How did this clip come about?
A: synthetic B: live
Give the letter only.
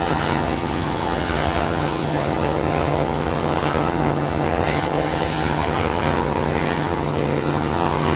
A